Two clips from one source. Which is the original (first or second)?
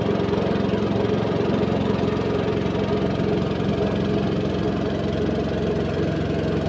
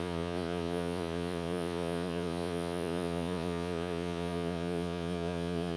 first